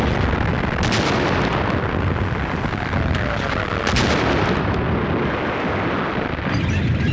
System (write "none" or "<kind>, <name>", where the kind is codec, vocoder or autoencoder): none